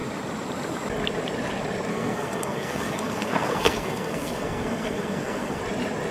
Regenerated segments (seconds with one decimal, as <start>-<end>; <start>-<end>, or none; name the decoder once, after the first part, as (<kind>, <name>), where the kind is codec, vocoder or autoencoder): 1.9-5.6 (codec, SNAC)